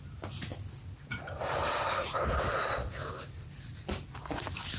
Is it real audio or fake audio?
real